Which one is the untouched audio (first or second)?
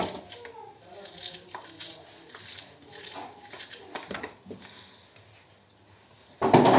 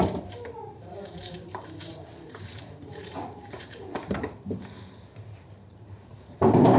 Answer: first